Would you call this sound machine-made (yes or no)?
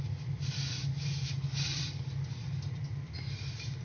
no